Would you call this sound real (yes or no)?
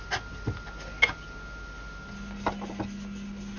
yes